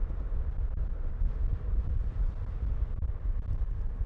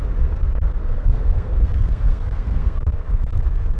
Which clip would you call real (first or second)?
first